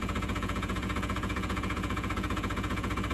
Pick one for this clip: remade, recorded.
remade